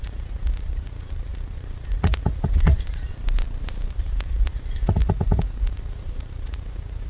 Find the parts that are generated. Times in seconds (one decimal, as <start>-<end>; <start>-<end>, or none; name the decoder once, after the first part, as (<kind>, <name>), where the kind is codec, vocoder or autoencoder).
0.0-3.1 (vocoder, Vocos); 3.9-7.1